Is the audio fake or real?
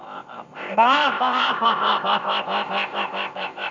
fake